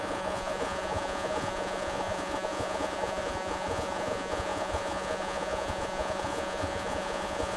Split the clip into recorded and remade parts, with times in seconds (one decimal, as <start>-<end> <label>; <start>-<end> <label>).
0.0-7.6 remade